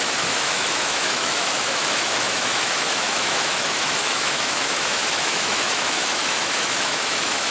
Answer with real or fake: fake